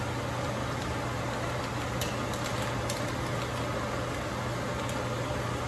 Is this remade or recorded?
recorded